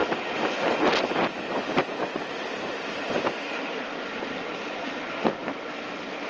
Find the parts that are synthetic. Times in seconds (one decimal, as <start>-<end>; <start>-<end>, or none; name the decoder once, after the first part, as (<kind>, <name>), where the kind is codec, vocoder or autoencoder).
none